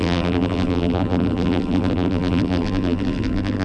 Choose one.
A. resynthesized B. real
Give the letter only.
A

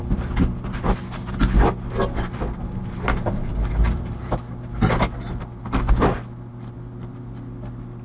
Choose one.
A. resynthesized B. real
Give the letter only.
B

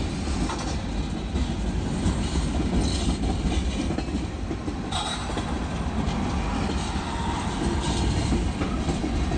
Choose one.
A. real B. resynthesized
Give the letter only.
A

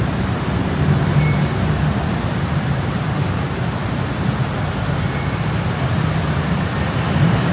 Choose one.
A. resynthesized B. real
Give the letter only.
A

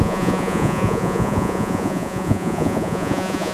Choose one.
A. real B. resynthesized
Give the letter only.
B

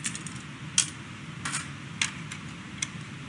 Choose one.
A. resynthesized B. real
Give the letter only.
B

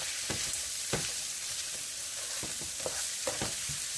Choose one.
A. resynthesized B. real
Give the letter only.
A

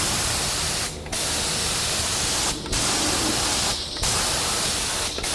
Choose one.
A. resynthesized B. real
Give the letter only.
B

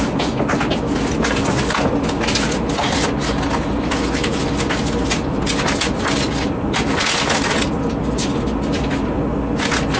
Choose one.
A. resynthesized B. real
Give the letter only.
B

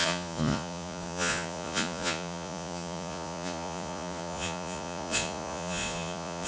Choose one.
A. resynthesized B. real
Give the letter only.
A